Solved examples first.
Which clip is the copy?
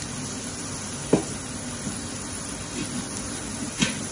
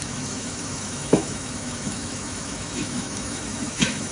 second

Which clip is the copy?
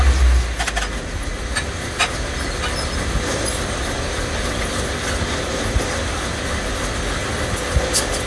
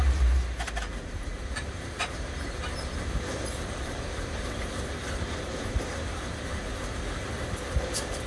second